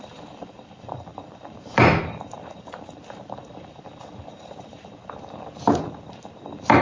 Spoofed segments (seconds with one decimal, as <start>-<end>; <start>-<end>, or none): 0.0-5.0